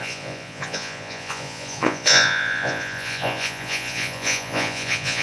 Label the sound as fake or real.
fake